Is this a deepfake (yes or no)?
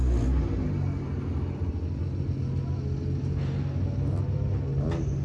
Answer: no